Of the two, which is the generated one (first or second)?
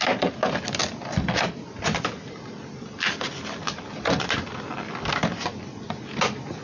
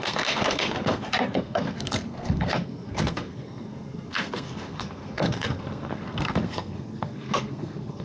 second